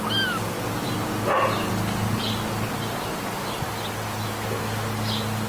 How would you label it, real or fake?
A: real